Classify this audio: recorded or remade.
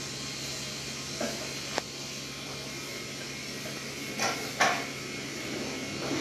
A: recorded